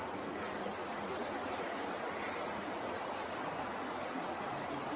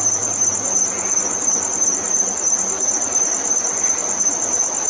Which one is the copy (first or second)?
first